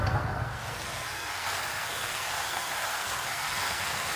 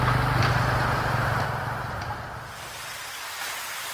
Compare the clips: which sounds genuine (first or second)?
second